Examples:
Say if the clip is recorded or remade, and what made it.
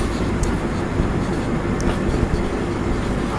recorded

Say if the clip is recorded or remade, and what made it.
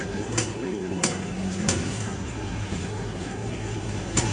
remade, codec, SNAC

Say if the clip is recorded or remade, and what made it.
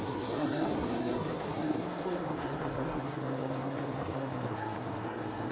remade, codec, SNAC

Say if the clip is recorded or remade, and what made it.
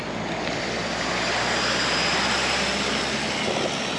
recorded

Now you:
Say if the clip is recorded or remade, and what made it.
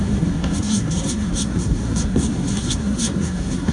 remade, codec, SNAC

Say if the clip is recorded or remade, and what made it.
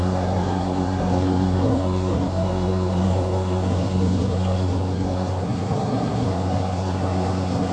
remade, codec, SNAC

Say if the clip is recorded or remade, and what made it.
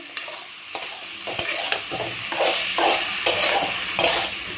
recorded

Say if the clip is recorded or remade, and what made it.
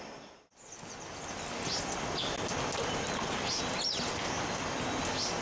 recorded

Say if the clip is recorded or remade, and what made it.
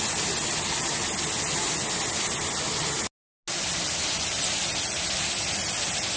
recorded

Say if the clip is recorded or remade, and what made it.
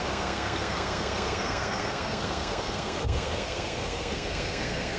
remade, codec, SNAC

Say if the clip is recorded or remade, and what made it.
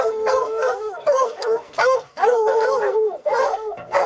remade, codec, SNAC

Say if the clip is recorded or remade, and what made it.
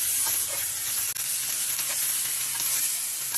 recorded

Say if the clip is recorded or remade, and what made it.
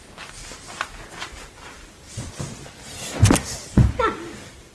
recorded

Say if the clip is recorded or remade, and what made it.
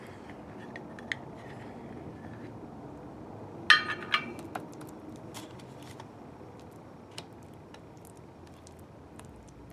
recorded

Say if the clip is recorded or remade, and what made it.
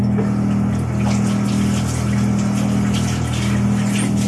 recorded